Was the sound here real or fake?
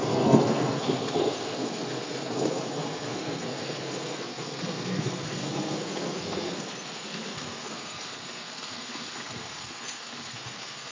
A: fake